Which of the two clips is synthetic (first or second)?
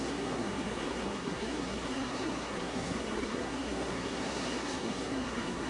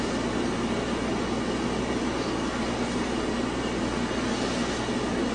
first